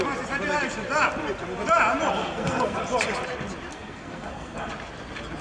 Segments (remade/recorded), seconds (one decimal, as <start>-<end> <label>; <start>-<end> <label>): 0.0-2.2 recorded; 2.2-2.8 remade; 2.8-3.7 recorded; 3.7-4.7 remade; 4.7-5.4 recorded

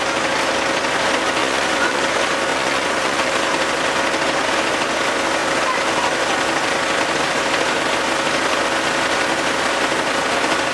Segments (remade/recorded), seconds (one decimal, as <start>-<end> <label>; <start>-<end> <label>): 0.0-1.4 recorded; 1.4-2.0 remade; 2.0-2.5 recorded; 2.5-3.3 remade; 3.3-10.7 recorded

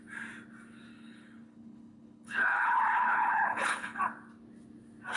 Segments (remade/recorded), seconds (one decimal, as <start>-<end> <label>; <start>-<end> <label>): 0.0-0.9 recorded; 0.9-4.0 remade; 4.0-5.2 recorded

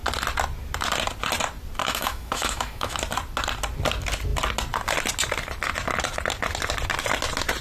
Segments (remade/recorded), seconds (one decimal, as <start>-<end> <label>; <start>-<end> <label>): 0.0-1.8 recorded; 1.8-3.0 remade; 3.0-7.6 recorded

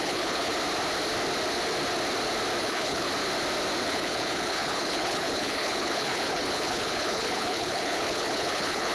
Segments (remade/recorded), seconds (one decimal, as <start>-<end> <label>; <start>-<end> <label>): 0.0-0.5 remade; 0.5-2.6 recorded; 2.6-3.1 remade; 3.1-3.8 recorded; 3.8-8.9 remade

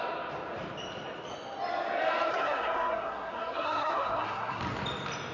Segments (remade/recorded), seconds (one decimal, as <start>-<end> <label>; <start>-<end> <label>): 0.0-2.3 recorded; 2.3-4.6 remade; 4.6-5.3 recorded

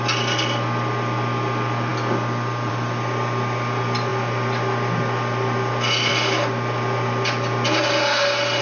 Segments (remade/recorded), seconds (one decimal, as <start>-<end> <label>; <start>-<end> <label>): 0.0-8.6 recorded